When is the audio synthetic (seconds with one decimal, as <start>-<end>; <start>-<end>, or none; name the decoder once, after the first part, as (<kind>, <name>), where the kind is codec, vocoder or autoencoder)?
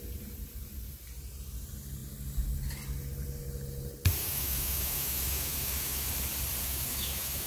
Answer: 4.2-6.1 (autoencoder, DAC-VAE); 6.6-7.5